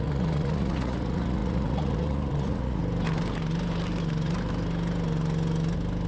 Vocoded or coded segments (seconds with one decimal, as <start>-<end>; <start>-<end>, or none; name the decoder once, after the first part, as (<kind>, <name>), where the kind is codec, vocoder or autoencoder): 0.0-2.8 (vocoder, Vocos)